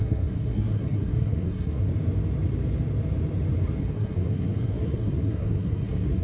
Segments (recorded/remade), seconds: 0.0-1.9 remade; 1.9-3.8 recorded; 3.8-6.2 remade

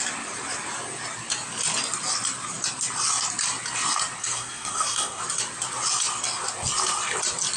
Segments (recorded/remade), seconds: 0.0-4.2 recorded; 4.2-5.2 remade; 5.2-7.6 recorded

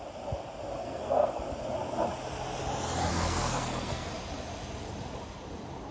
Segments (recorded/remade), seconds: 0.0-0.8 recorded; 0.8-1.4 remade; 1.4-3.1 recorded; 3.1-4.1 remade; 4.1-5.9 recorded

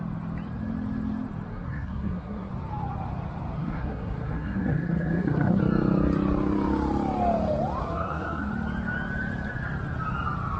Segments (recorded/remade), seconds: 0.0-1.5 recorded; 1.5-2.5 remade; 2.5-3.6 recorded; 3.6-5.6 remade; 5.6-7.8 recorded; 7.8-8.5 remade; 8.5-10.6 recorded